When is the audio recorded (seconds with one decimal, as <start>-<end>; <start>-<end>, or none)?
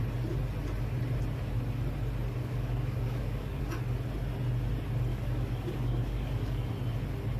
0.0-2.4; 3.6-5.1; 6.7-7.4